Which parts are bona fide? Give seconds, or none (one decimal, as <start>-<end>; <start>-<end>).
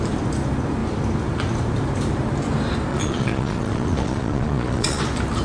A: 0.0-2.9; 5.0-5.4